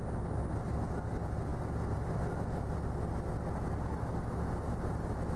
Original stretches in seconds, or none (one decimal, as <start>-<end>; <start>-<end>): 0.0-5.4